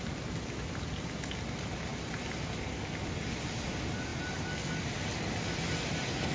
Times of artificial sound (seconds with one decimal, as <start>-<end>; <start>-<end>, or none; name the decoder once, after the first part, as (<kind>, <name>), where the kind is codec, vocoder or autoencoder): none